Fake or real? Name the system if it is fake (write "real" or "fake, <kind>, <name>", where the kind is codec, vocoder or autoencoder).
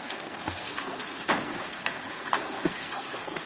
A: fake, codec, SNAC